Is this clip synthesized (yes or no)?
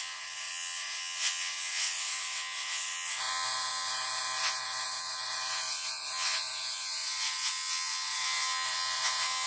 yes